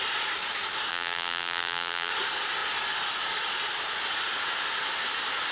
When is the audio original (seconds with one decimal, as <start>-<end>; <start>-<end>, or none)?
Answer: 0.0-0.9; 2.1-5.5